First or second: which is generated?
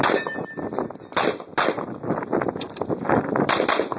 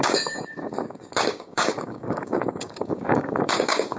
second